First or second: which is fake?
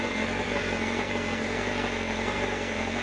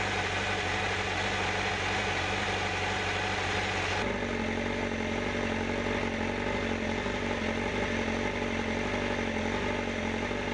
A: first